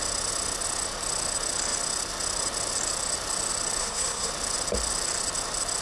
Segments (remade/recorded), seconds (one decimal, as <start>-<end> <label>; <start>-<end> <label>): 0.0-3.8 recorded; 3.8-4.3 remade; 4.3-5.8 recorded